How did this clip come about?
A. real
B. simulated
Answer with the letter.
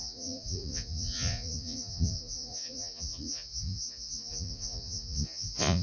B